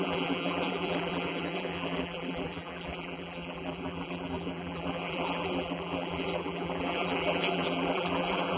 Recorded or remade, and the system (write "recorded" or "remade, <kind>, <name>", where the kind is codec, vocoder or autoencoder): remade, vocoder, BigVGAN v2